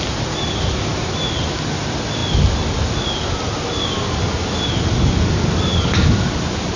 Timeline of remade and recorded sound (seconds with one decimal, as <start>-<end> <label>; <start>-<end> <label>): 0.0-6.8 recorded